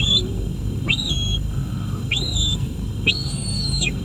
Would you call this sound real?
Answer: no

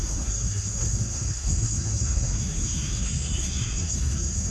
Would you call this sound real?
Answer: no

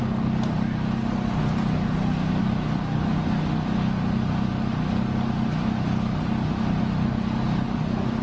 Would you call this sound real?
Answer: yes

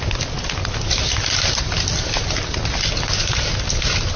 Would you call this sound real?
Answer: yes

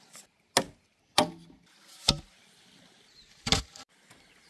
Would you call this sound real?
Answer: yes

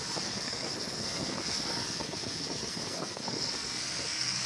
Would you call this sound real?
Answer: no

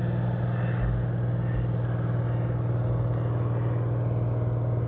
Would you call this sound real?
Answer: yes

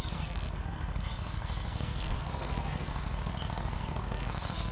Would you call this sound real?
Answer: no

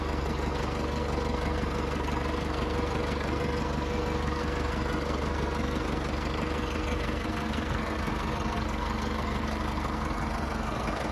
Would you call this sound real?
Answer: no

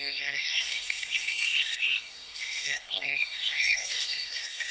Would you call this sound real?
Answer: no